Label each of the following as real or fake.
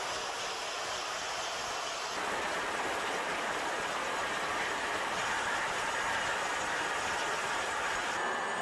real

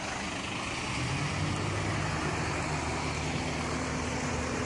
real